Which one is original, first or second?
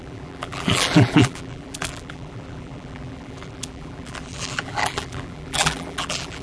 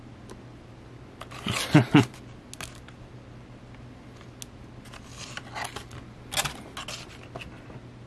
second